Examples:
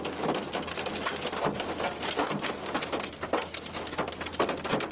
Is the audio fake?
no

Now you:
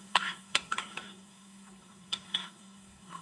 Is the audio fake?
yes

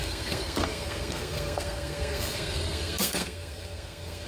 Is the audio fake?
yes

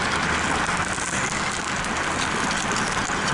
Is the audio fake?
no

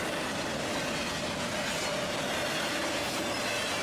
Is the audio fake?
no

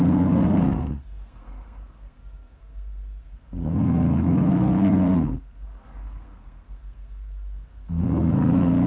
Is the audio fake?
yes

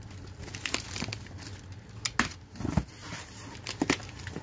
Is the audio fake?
no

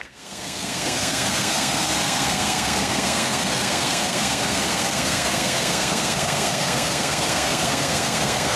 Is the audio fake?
yes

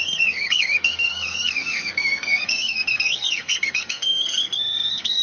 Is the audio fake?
yes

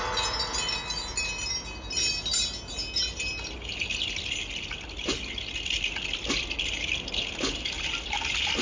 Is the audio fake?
no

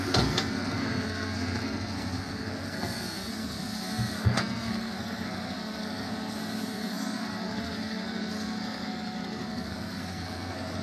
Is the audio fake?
yes